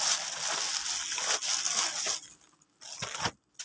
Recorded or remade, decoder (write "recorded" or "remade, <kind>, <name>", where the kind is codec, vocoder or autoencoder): recorded